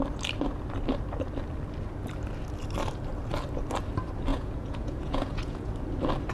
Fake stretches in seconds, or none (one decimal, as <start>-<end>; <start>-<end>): 4.3-5.7